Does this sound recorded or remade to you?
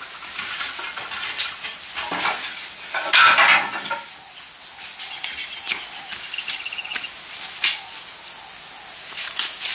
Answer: recorded